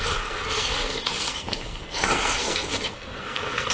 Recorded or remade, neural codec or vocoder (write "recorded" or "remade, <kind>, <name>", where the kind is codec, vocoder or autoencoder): remade, codec, SNAC